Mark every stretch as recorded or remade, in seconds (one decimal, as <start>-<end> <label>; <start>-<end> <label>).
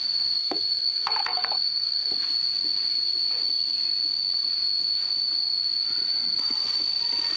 0.0-0.4 recorded; 0.4-2.1 remade; 2.1-7.4 recorded